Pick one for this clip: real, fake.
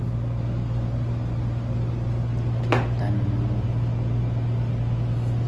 real